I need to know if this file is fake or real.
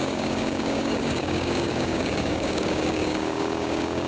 fake